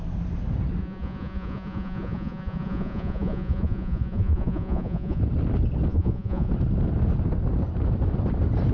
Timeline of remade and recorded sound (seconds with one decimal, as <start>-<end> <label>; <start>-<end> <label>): 0.0-0.8 recorded; 0.8-5.2 remade; 5.2-5.9 recorded; 5.9-6.5 remade; 6.5-8.7 recorded

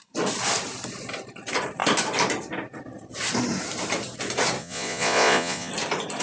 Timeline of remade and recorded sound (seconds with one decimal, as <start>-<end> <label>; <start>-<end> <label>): 0.0-4.6 recorded; 4.6-5.7 remade; 5.7-6.2 recorded

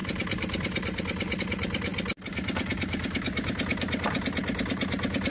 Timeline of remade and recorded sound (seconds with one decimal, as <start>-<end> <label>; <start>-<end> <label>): 0.0-5.3 recorded

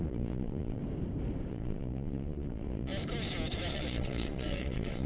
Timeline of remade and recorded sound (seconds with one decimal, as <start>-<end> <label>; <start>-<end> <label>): 0.0-0.8 remade; 0.8-1.5 recorded; 1.5-2.9 remade; 2.9-3.7 recorded; 3.7-5.1 remade

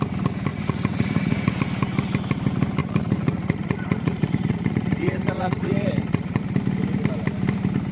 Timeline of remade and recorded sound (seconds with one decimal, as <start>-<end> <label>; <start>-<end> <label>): 0.0-0.5 recorded; 0.5-1.5 remade; 1.5-2.8 recorded; 2.8-6.4 remade; 6.4-7.9 recorded